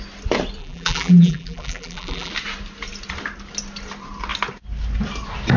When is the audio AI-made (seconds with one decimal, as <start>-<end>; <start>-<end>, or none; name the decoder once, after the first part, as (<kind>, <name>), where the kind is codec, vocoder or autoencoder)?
0.6-2.3 (vocoder, BigVGAN v2)